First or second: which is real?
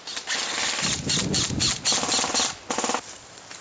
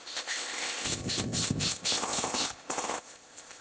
first